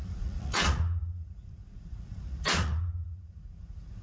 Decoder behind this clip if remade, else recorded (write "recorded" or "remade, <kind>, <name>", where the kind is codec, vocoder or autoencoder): remade, vocoder, Vocos